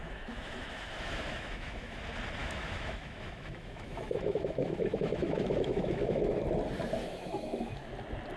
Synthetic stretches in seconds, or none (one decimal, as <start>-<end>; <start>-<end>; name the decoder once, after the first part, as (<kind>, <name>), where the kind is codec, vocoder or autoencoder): 0.0-2.0 (autoencoder, DAC-VAE); 2.4-6.4; 7.0-7.9